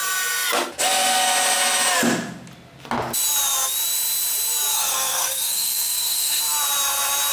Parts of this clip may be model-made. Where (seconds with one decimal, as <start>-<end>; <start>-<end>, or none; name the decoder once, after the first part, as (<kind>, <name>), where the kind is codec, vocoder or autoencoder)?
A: 4.7-6.4 (codec, SNAC)